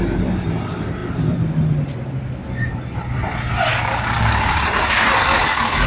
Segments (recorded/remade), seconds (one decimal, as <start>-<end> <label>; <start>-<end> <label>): 0.0-3.7 recorded; 3.7-4.5 remade; 4.5-5.2 recorded; 5.2-5.9 remade